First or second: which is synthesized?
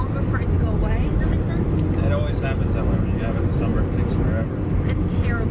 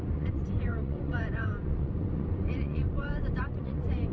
second